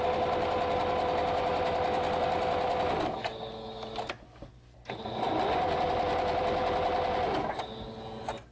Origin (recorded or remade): recorded